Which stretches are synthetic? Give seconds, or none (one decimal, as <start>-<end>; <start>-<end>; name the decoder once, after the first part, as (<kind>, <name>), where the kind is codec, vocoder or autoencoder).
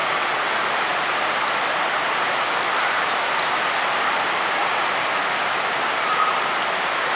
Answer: 0.0-0.5 (vocoder, WaveNeXt)